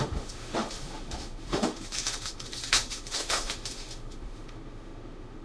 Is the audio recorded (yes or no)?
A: no